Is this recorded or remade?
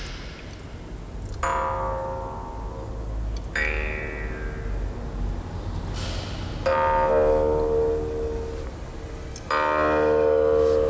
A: recorded